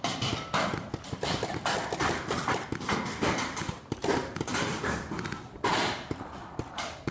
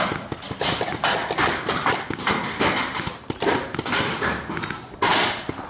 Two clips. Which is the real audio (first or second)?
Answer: second